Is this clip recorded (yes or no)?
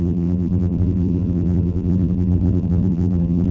no